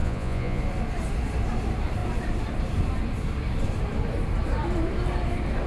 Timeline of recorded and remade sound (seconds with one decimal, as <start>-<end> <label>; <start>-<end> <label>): 0.0-0.6 remade; 0.6-5.7 recorded